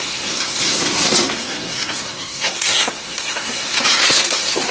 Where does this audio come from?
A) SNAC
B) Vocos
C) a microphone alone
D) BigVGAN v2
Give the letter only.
A